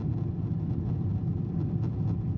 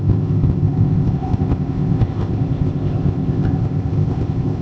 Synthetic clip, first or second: second